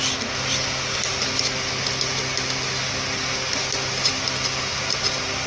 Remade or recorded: recorded